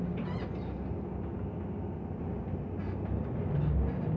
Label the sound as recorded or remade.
recorded